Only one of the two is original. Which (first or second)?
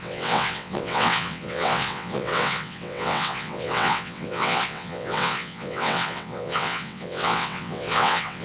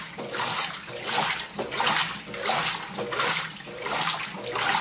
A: second